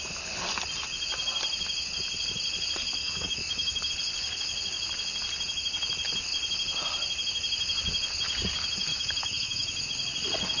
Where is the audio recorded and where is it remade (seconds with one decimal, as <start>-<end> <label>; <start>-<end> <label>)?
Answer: 0.0-3.0 recorded; 3.0-3.9 remade; 3.9-8.9 recorded; 8.9-9.8 remade; 9.8-10.6 recorded